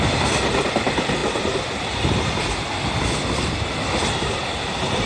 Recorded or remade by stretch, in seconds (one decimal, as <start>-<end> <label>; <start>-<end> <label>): 0.0-5.1 recorded